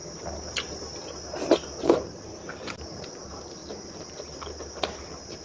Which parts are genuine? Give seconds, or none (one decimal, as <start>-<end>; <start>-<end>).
0.0-5.4